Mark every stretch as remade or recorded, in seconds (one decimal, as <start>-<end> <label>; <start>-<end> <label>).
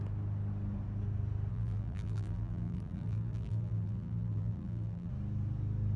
0.0-1.5 recorded; 1.5-5.1 remade; 5.1-6.0 recorded